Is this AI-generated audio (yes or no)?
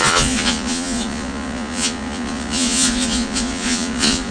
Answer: yes